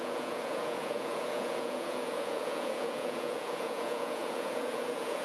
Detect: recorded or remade remade